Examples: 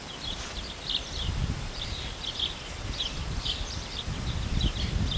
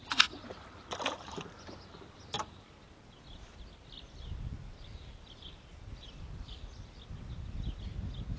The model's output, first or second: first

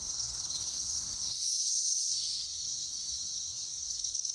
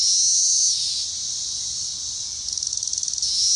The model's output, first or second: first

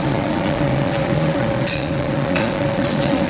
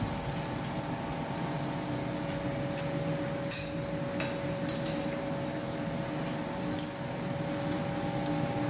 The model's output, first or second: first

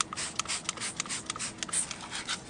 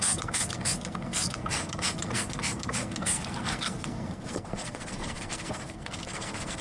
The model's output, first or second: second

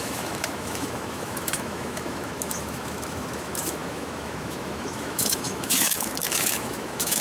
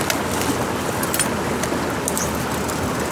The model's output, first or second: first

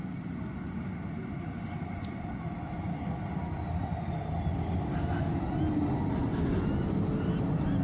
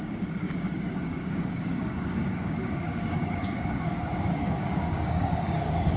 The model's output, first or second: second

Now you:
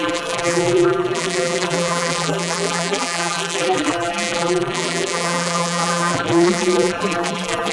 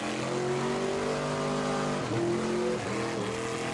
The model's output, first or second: first